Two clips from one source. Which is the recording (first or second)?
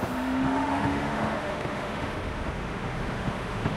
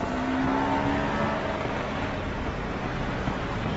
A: second